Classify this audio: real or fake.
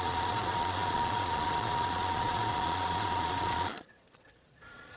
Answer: fake